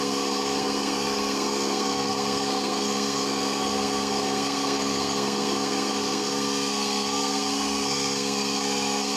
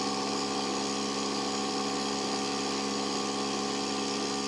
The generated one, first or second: first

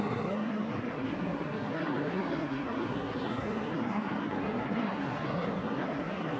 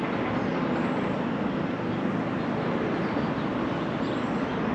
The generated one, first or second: first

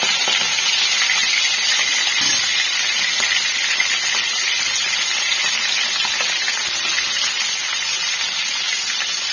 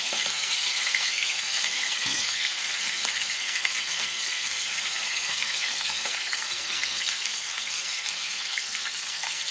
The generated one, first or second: second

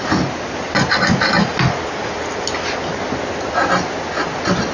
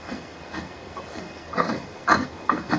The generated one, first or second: second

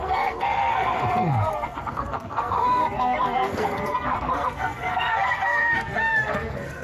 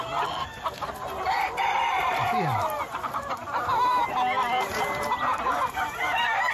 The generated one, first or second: first